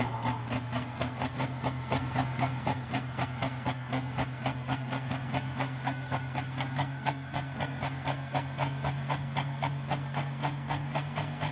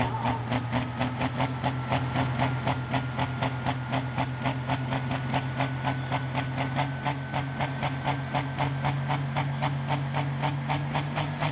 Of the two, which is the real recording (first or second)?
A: second